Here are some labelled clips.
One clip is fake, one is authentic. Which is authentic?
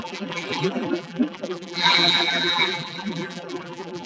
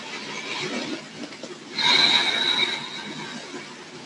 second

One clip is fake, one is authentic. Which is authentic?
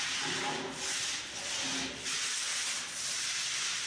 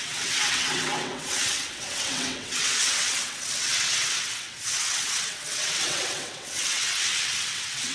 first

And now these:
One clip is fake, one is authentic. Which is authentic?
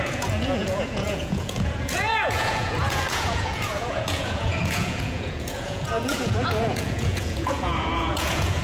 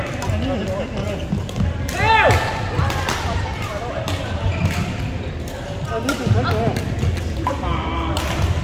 second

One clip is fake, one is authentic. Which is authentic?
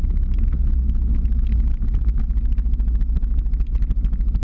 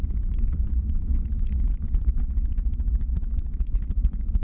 first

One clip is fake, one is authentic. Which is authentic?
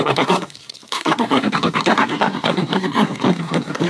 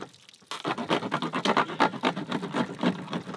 second